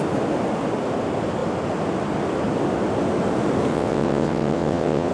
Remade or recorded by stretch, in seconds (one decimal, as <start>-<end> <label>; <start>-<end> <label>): 0.0-3.7 recorded; 3.7-5.1 remade